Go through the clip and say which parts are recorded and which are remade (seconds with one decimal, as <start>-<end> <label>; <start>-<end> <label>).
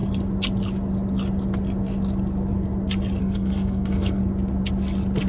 0.0-3.2 recorded; 3.2-4.2 remade; 4.2-5.3 recorded